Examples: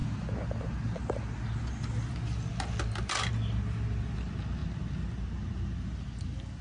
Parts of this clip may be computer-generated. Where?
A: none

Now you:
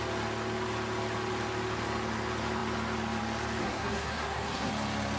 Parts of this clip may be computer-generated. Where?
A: 3.6-4.7 (codec, SNAC)

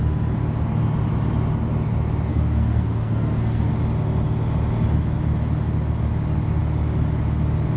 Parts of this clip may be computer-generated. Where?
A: 2.3-3.7 (codec, SNAC)

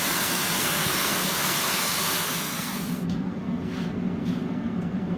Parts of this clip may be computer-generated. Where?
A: 0.0-5.2 (codec, SNAC)

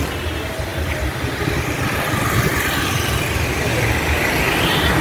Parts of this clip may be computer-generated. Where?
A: none

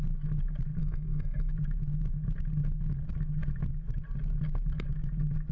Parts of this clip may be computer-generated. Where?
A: 0.8-1.5 (codec, SNAC)

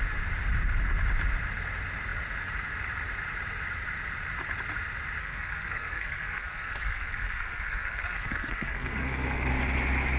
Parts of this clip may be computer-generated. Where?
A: 5.2-9.5 (codec, SNAC)

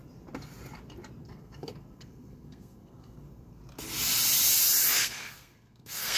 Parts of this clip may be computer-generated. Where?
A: 1.2-3.6 (codec, SNAC); 4.9-6.2